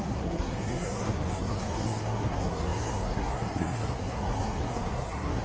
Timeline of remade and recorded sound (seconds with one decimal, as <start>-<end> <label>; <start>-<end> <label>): 0.0-5.4 remade